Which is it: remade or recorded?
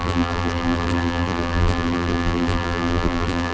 remade